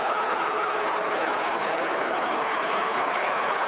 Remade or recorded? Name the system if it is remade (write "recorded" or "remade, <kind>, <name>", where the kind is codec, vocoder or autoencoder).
remade, codec, HILCodec